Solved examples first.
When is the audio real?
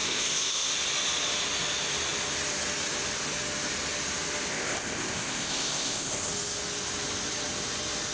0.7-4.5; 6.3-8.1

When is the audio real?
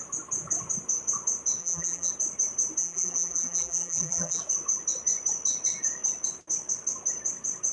0.0-1.6; 2.1-2.8; 4.4-7.7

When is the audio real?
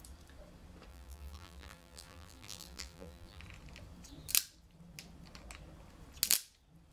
0.0-0.9; 3.4-6.9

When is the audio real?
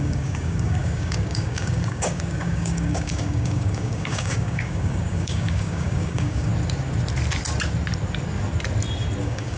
6.5-9.2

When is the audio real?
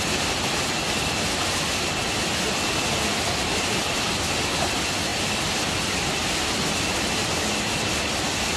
0.0-8.6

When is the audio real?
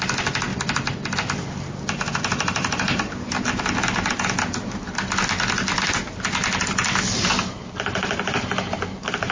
0.0-0.5; 3.6-9.3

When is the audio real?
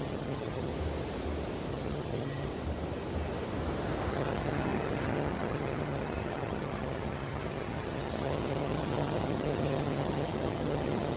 0.7-1.7; 2.5-4.1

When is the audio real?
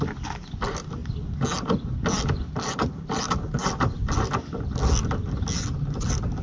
0.0-6.4